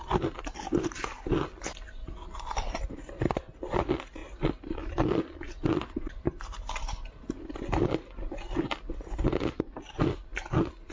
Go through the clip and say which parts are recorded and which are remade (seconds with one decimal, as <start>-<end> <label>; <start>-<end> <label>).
0.0-10.9 recorded